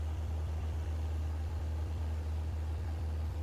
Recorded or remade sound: remade